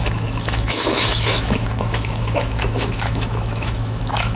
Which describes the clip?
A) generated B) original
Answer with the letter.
A